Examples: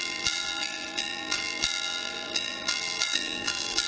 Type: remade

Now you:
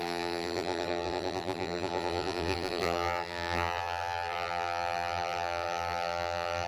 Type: remade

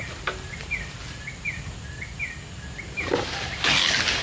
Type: remade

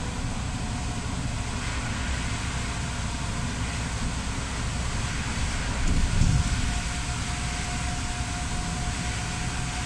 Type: recorded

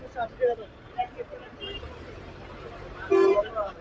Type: remade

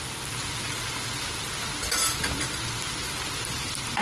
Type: recorded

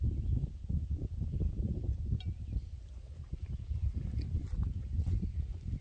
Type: recorded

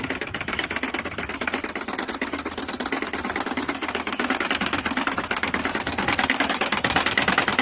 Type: remade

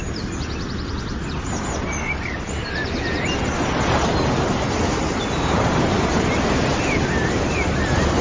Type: recorded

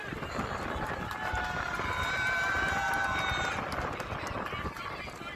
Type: recorded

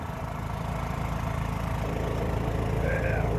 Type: recorded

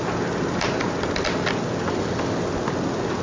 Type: recorded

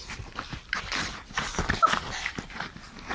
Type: recorded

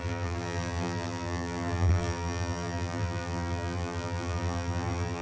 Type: remade